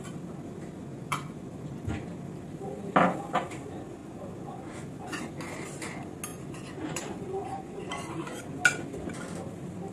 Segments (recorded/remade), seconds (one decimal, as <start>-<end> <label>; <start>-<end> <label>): 0.0-0.8 recorded; 0.8-1.8 remade; 1.8-4.0 recorded; 4.0-5.3 remade; 5.3-6.3 recorded; 6.3-8.4 remade; 8.4-9.9 recorded